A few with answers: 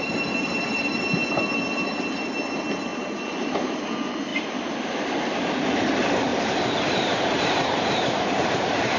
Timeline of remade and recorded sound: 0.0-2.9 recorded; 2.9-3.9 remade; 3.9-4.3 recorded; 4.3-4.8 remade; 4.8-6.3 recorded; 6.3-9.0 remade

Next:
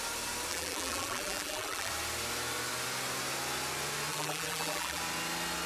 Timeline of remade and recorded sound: 0.0-0.5 recorded; 0.5-1.9 remade; 1.9-4.1 recorded; 4.1-5.0 remade; 5.0-5.7 recorded

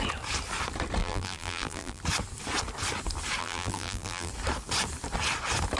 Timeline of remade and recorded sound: 0.0-1.0 recorded; 1.0-2.0 remade; 2.0-3.4 recorded; 3.4-4.3 remade; 4.3-5.8 recorded

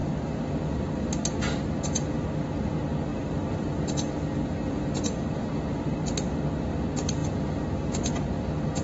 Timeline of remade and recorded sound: 0.0-1.0 remade; 1.0-3.1 recorded; 3.1-6.0 remade; 6.0-7.2 recorded; 7.2-8.1 remade; 8.1-8.8 recorded

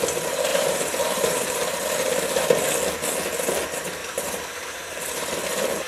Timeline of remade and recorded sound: 0.0-0.5 recorded; 0.5-2.4 remade; 2.4-4.0 recorded; 4.0-5.3 remade; 5.3-5.9 recorded

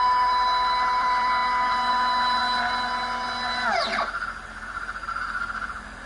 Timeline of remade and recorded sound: 0.0-2.4 remade; 2.4-6.1 recorded

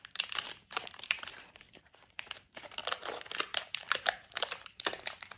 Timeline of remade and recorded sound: 0.0-2.8 remade; 2.8-3.4 recorded; 3.4-5.4 remade